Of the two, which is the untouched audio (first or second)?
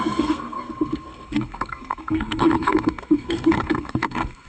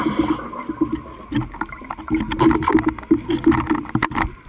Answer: second